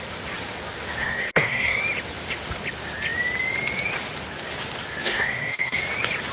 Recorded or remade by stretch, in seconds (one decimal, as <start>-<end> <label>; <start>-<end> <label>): 0.0-1.0 recorded; 1.0-1.8 remade; 1.8-5.0 recorded; 5.0-5.8 remade; 5.8-6.3 recorded